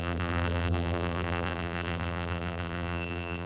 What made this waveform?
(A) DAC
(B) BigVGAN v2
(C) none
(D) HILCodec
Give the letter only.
B